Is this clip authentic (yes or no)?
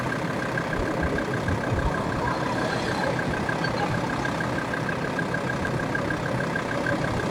yes